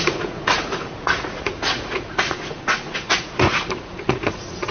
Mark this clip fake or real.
fake